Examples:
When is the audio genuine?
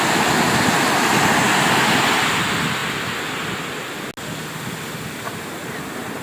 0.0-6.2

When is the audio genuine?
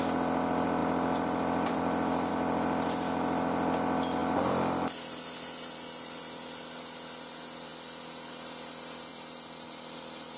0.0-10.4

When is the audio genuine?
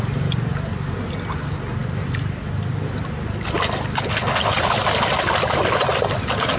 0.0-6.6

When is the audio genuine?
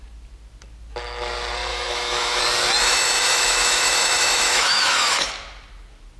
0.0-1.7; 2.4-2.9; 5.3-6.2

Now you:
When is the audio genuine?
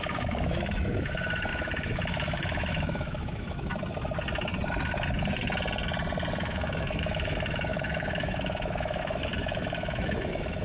3.7-6.4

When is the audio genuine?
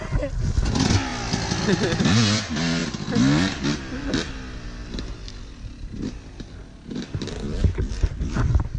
0.0-8.8